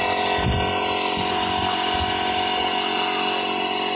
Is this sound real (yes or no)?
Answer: yes